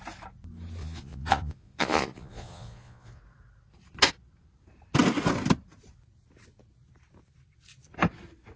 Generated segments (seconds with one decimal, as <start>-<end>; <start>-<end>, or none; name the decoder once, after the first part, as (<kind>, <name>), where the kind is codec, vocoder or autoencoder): 0.8-3.2 (vocoder, Vocos)